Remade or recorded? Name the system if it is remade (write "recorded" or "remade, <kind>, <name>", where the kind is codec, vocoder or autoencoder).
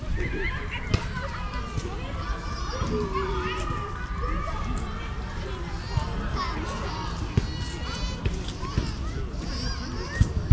recorded